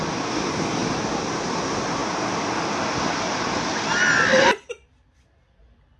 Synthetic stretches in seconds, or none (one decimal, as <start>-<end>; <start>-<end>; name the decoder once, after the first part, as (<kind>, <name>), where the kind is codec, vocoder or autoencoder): none